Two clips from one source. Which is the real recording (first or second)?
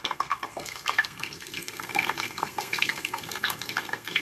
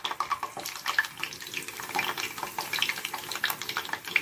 second